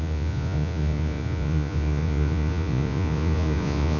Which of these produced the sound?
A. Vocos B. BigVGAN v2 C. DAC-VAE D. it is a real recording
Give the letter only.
A